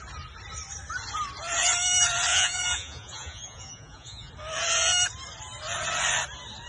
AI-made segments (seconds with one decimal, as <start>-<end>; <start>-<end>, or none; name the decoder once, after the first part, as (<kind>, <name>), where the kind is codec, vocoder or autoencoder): 2.3-4.3 (vocoder, Vocos)